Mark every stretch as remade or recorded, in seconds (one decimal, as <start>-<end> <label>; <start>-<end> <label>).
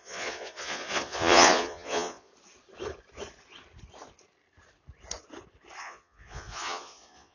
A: 0.0-2.3 remade; 2.3-5.8 recorded; 5.8-7.3 remade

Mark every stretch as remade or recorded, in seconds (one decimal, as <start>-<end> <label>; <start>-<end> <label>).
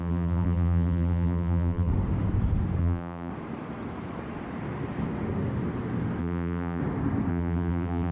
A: 0.0-1.9 remade; 1.9-2.8 recorded; 2.8-3.3 remade; 3.3-6.2 recorded; 6.2-6.8 remade; 6.8-7.3 recorded; 7.3-8.1 remade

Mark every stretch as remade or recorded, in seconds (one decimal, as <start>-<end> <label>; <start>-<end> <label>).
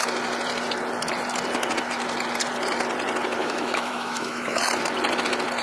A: 0.0-3.4 recorded; 3.4-4.6 remade; 4.6-5.6 recorded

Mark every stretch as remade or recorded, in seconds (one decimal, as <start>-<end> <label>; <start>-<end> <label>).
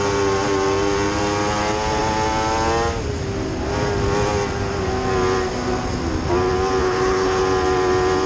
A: 0.0-6.8 recorded; 6.8-7.4 remade; 7.4-8.3 recorded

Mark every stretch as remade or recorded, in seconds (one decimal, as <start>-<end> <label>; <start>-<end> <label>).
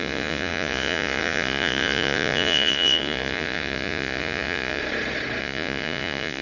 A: 0.0-4.8 remade; 4.8-5.4 recorded; 5.4-6.4 remade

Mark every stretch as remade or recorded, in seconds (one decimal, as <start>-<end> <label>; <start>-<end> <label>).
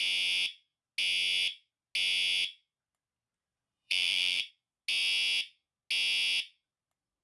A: 0.0-3.5 recorded; 3.5-4.5 remade; 4.5-7.2 recorded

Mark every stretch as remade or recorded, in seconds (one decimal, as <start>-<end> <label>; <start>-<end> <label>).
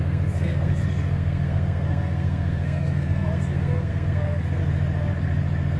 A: 0.0-4.6 remade; 4.6-5.8 recorded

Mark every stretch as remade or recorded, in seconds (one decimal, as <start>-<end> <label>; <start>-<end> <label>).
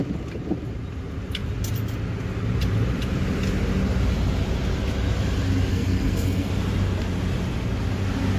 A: 0.0-5.7 recorded; 5.7-6.5 remade; 6.5-8.4 recorded